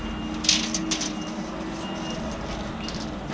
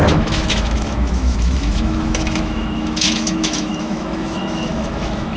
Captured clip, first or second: first